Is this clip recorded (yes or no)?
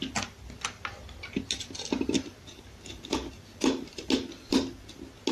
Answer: yes